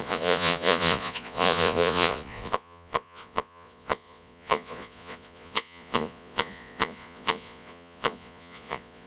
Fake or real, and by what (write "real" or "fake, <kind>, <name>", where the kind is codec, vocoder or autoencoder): fake, vocoder, Vocos